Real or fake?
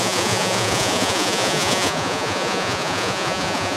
fake